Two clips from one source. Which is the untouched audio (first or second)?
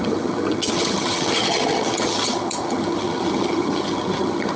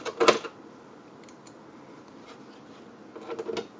second